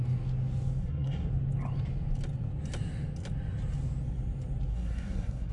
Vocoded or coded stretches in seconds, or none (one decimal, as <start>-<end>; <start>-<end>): 0.8-1.3; 4.7-5.5